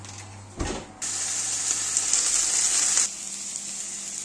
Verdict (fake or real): real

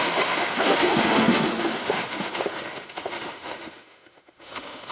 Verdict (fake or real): fake